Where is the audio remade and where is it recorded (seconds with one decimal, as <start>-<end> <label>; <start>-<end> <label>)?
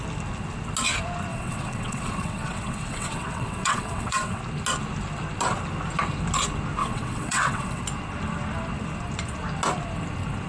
0.0-1.3 recorded; 1.3-4.4 remade; 4.4-6.8 recorded; 6.8-7.8 remade; 7.8-10.5 recorded